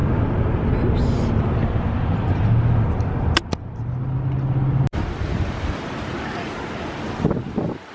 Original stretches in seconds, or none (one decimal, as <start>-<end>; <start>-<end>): 0.0-7.9

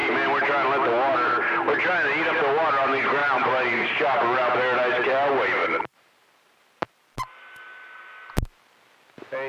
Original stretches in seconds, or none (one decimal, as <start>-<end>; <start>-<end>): 0.0-3.2; 4.5-5.6; 7.0-9.5

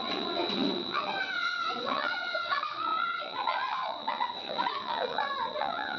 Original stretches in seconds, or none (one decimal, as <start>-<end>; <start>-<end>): none